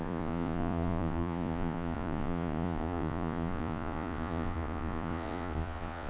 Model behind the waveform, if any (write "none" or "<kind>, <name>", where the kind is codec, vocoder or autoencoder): vocoder, Vocos